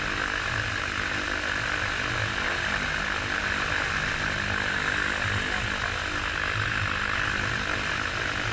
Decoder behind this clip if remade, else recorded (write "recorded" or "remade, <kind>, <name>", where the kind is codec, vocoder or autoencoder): recorded